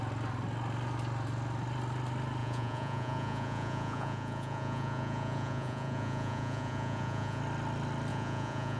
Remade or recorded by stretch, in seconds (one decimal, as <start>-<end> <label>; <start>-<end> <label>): 0.0-2.4 recorded; 2.4-7.4 remade; 7.4-8.1 recorded; 8.1-8.8 remade